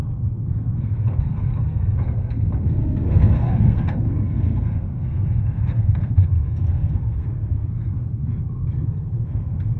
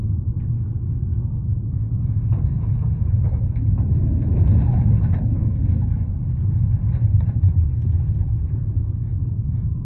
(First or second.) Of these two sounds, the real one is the second